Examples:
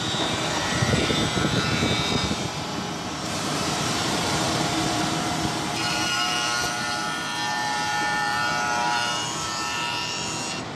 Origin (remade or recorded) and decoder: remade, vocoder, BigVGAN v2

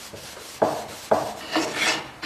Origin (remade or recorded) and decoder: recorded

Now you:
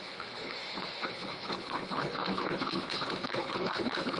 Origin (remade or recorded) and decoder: remade, codec, HILCodec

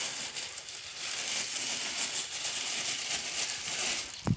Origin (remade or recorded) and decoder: recorded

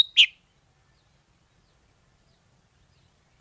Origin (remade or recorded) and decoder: recorded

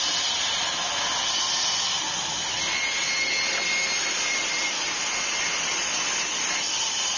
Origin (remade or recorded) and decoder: recorded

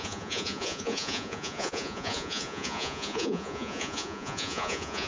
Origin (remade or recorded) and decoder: remade, vocoder, Vocos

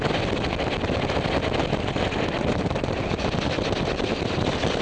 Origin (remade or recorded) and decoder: recorded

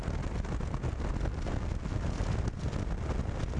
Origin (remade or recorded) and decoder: recorded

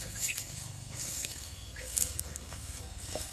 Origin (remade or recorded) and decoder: remade, codec, SNAC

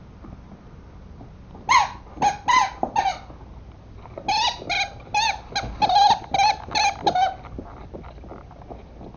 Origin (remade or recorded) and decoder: recorded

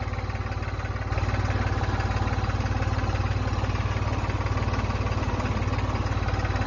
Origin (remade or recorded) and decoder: recorded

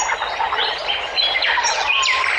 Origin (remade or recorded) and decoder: recorded